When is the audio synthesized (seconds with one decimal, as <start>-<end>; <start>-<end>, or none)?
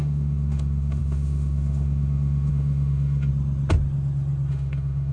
0.0-3.3; 4.5-5.1